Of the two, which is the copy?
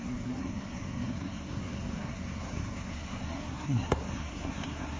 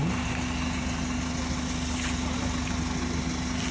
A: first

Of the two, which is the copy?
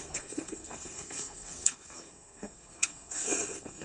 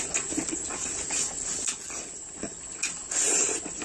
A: first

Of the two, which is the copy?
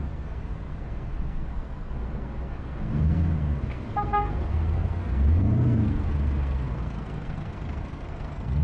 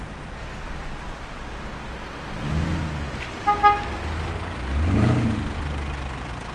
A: first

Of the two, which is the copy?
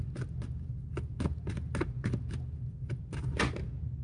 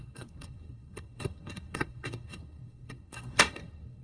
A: second